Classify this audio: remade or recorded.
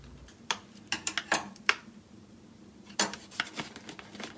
recorded